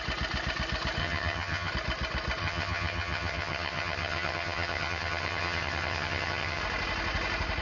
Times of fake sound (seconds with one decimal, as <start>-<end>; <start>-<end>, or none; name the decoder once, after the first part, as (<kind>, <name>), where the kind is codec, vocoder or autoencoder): 1.0-1.7 (vocoder, HiFi-GAN); 2.4-6.6